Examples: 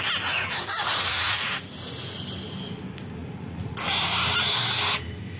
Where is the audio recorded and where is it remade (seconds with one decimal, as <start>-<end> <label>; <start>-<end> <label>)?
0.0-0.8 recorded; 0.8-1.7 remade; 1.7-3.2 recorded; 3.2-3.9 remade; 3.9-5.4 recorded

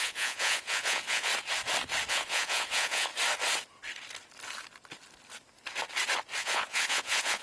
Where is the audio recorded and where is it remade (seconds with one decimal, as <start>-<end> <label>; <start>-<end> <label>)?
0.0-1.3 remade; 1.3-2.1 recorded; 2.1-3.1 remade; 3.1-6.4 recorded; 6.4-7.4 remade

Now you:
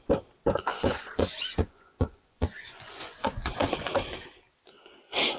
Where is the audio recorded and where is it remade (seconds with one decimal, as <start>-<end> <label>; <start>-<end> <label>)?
0.0-0.7 recorded; 0.7-3.9 remade; 3.9-5.4 recorded